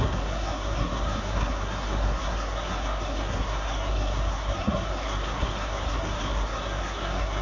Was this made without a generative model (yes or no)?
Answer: no